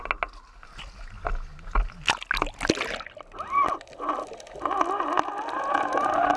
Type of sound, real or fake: real